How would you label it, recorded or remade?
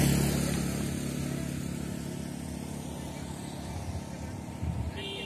recorded